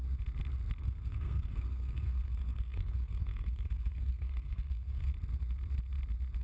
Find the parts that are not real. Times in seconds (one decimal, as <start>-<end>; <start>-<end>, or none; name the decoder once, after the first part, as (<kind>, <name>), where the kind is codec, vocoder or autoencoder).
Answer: 0.8-5.1 (codec, SNAC)